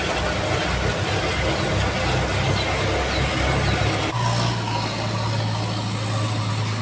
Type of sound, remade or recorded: recorded